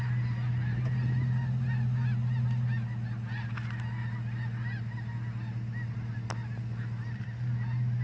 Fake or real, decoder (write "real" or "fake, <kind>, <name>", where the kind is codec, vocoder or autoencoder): real